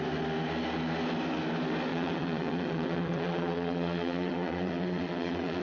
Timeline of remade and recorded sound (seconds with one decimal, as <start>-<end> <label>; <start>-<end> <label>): 0.0-1.9 recorded; 1.9-5.6 remade